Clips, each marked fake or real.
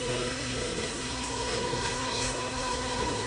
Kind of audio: fake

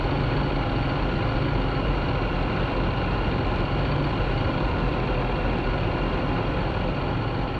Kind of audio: real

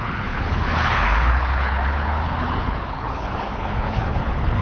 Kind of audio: fake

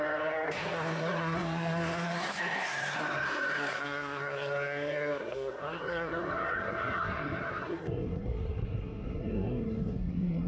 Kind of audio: fake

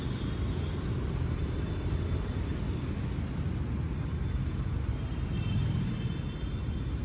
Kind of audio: real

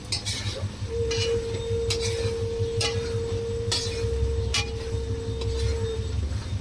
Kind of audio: real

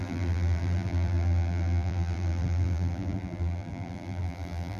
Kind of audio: fake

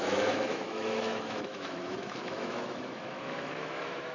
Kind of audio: fake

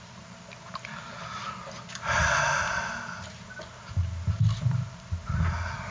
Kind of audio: real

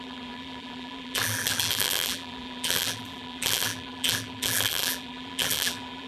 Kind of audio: fake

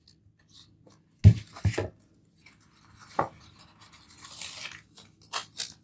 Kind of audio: real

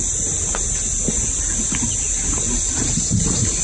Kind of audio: real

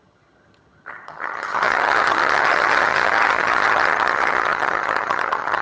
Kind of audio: fake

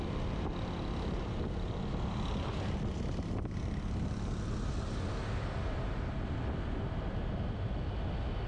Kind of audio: real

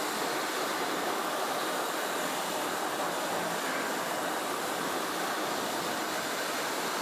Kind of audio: real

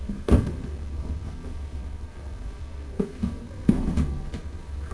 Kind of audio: fake